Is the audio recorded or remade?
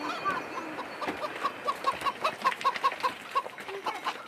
recorded